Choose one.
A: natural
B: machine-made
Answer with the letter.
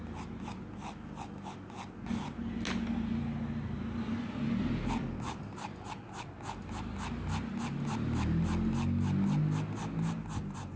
A